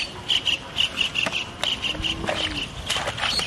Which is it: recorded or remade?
recorded